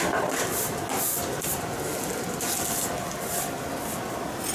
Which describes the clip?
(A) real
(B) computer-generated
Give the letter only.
A